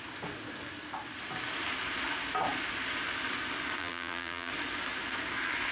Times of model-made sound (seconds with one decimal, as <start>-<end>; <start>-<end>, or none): 3.8-4.5